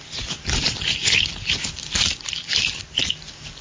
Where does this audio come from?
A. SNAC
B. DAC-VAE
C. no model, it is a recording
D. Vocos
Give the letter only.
C